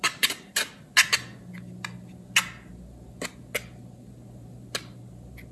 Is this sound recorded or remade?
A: recorded